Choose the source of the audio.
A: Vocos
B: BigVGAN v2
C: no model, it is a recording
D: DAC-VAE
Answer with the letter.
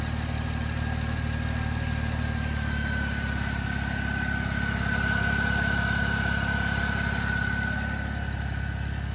C